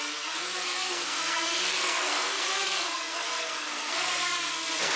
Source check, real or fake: fake